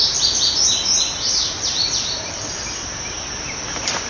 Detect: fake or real real